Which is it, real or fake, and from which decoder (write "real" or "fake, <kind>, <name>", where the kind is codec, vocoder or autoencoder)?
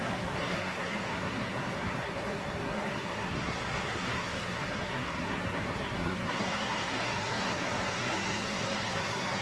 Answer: fake, codec, SNAC